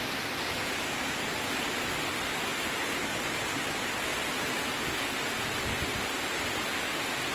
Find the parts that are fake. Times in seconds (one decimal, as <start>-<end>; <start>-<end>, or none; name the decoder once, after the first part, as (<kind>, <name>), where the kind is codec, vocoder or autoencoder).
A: 2.5-3.5 (vocoder, BigVGAN v2); 4.1-4.6; 5.9-6.5